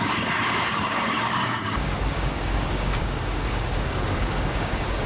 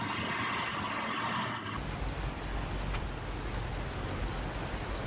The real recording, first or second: second